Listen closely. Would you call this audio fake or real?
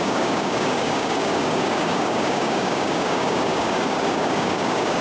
fake